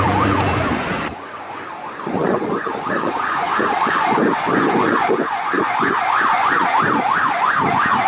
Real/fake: fake